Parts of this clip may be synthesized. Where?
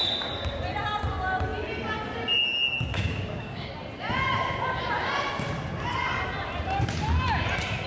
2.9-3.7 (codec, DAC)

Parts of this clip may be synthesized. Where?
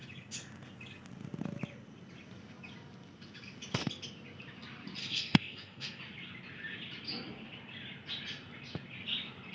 5.0-6.0 (codec, SNAC)